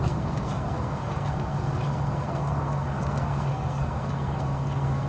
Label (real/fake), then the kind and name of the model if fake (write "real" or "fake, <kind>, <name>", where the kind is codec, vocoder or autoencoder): fake, codec, SNAC